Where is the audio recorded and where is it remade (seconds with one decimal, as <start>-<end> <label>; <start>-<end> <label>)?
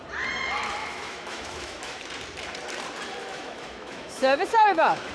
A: 0.0-0.8 recorded; 0.8-2.0 remade; 2.0-3.2 recorded; 3.2-5.1 remade